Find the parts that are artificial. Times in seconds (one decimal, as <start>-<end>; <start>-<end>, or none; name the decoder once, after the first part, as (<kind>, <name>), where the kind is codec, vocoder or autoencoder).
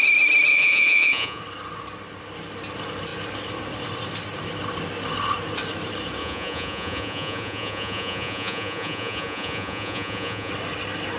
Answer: 0.5-1.4 (vocoder, Vocos); 6.2-10.5